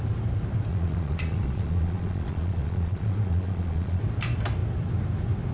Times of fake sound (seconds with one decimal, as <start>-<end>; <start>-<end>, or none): 0.7-4.0